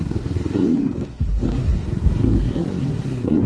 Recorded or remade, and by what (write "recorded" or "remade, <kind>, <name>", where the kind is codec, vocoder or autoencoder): remade, codec, SNAC